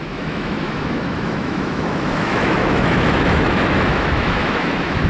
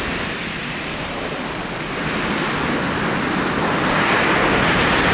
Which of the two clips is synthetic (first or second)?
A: first